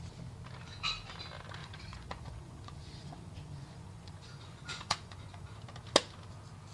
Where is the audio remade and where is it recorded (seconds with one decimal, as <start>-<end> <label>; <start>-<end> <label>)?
0.0-1.6 recorded; 1.6-5.6 remade; 5.6-6.7 recorded